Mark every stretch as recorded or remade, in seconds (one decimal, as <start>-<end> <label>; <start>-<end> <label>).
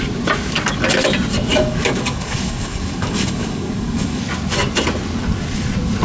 0.0-1.5 recorded; 1.5-4.2 remade; 4.2-6.0 recorded